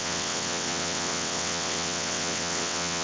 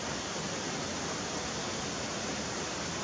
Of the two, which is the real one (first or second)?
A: second